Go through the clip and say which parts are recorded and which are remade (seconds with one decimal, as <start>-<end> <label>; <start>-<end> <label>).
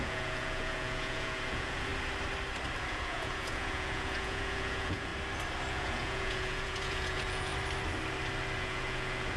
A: 0.0-1.9 remade; 1.9-2.8 recorded; 2.8-5.1 remade; 5.1-5.7 recorded; 5.7-7.5 remade; 7.5-8.6 recorded; 8.6-9.4 remade